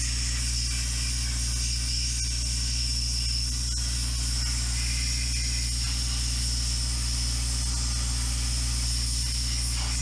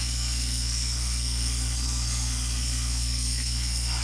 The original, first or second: first